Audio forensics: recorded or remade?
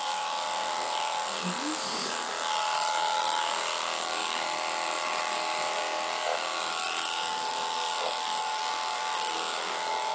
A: remade